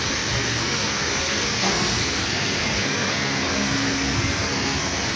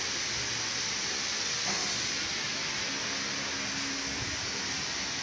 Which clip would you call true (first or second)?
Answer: second